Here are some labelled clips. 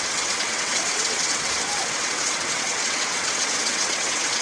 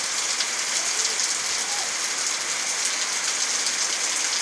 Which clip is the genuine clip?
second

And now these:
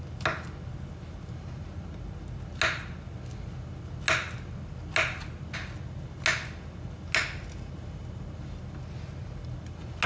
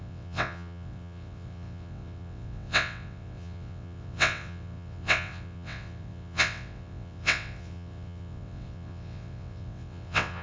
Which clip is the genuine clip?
first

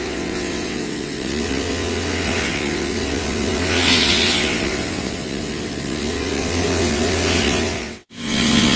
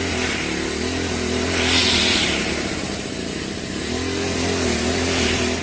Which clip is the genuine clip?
second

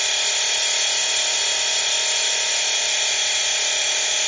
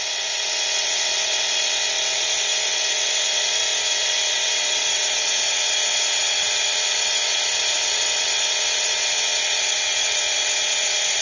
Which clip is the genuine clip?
first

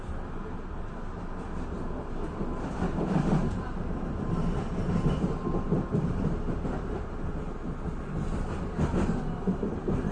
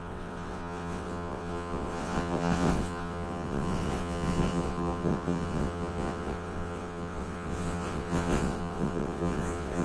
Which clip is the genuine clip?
first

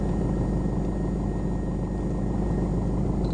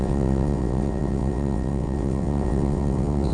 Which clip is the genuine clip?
first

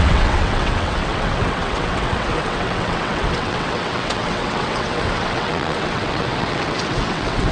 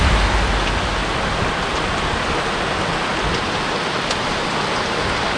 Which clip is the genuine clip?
second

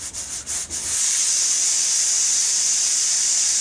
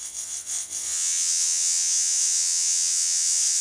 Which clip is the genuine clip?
first